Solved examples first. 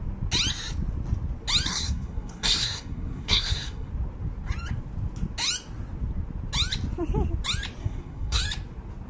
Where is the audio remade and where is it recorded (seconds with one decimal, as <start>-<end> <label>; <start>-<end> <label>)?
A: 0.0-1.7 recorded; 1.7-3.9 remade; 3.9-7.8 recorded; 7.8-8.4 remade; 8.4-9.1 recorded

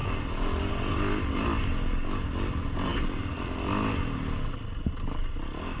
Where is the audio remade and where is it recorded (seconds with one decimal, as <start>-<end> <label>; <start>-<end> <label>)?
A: 0.0-5.8 recorded

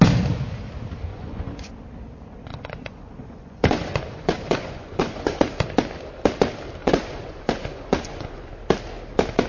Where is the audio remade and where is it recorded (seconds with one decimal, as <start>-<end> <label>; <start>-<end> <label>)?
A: 0.0-1.1 recorded; 1.1-1.7 remade; 1.7-2.5 recorded; 2.5-5.4 remade; 5.4-6.8 recorded; 6.8-8.5 remade; 8.5-9.5 recorded